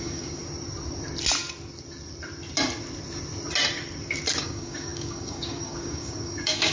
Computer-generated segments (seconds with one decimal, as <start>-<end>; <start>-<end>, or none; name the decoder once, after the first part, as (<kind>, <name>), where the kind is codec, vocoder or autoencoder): 0.0-0.4 (codec, DAC); 4.4-6.7